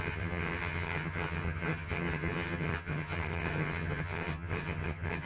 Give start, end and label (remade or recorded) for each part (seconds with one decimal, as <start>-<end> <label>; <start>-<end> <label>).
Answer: 0.0-5.3 remade